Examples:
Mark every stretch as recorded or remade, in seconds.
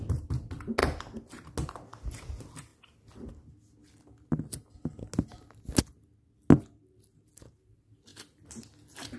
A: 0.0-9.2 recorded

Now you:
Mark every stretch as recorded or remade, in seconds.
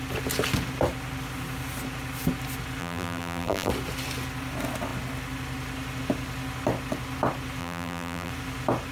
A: 0.0-2.8 recorded; 2.8-3.7 remade; 3.7-7.6 recorded; 7.6-8.3 remade; 8.3-8.9 recorded